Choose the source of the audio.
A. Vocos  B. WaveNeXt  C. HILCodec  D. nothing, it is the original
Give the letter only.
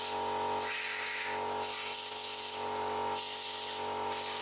D